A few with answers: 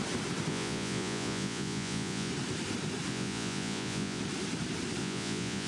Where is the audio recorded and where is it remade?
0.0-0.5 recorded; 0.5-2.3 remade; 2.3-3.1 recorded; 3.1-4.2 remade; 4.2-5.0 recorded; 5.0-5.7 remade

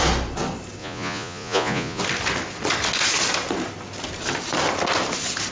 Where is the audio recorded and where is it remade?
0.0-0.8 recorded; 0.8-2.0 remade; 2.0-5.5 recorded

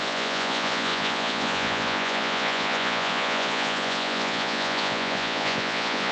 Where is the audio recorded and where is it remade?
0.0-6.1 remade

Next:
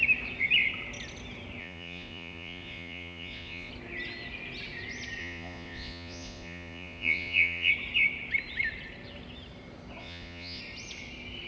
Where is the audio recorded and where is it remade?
0.0-1.6 recorded; 1.6-3.7 remade; 3.7-5.2 recorded; 5.2-7.7 remade; 7.7-10.0 recorded; 10.0-10.6 remade; 10.6-11.5 recorded

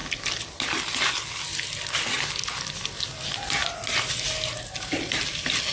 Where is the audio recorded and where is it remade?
0.0-5.7 recorded

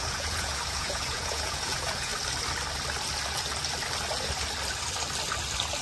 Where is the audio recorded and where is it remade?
0.0-2.1 remade; 2.1-5.8 recorded

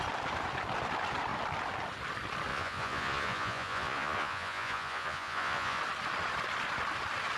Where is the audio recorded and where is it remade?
0.0-2.5 recorded; 2.5-5.8 remade; 5.8-7.4 recorded